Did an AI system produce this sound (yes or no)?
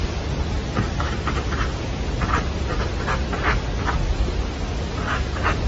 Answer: no